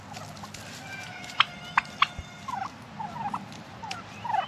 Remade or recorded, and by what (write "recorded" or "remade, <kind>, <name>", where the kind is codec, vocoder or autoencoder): recorded